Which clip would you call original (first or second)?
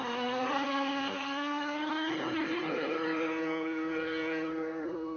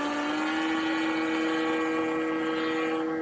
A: second